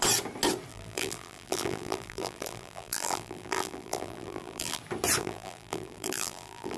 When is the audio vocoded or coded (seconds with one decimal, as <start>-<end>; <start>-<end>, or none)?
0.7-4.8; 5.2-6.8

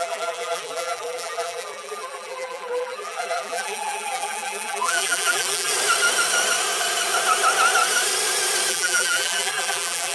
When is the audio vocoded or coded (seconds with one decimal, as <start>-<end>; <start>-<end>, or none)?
0.0-5.7; 8.7-10.1

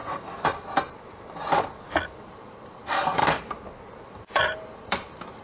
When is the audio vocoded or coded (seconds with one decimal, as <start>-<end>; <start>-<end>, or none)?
2.2-3.2; 4.1-5.4

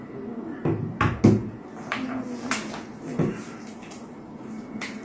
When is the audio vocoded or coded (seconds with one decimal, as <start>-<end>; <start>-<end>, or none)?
none